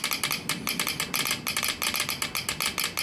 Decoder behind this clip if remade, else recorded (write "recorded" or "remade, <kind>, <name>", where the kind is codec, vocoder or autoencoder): recorded